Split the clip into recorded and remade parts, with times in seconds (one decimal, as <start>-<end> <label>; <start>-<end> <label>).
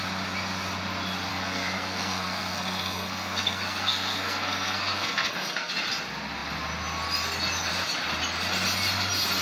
0.0-1.3 recorded; 1.3-5.7 remade; 5.7-9.4 recorded